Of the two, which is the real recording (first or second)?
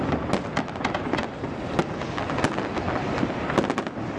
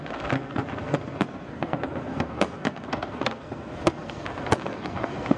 first